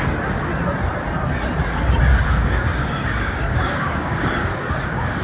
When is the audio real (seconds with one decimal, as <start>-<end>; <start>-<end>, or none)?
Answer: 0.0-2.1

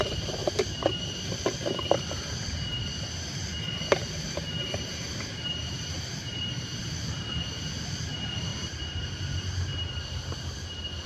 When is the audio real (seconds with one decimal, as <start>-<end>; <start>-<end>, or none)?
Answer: 0.0-0.4; 1.0-4.0; 6.8-8.5; 9.0-11.1

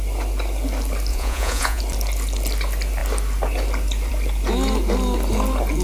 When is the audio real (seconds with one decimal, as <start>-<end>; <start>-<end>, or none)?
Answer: 0.0-1.1; 1.8-5.8